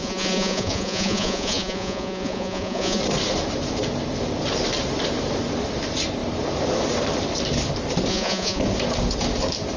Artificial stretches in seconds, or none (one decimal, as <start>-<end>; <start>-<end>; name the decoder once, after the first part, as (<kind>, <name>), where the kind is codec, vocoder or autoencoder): 0.0-3.0 (vocoder, Vocos); 8.1-8.6